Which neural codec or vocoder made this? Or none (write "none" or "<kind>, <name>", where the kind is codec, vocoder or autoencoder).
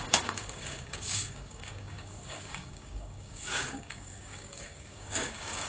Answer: codec, DAC